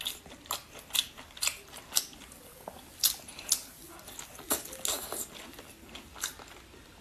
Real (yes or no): yes